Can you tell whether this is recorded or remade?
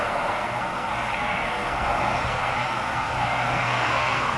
remade